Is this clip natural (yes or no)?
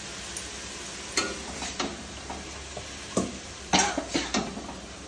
yes